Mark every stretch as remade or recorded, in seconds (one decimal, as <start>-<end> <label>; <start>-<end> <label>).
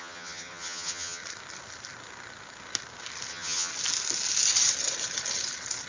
0.0-1.2 remade; 1.2-3.3 recorded; 3.3-3.7 remade; 3.7-5.9 recorded